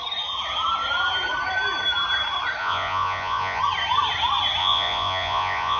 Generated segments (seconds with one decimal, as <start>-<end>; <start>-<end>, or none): 2.6-3.6; 4.6-5.8